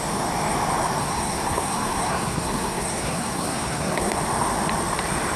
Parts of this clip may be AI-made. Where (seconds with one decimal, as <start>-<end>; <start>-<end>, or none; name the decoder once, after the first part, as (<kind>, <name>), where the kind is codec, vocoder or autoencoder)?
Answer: 1.0-4.2 (codec, SNAC)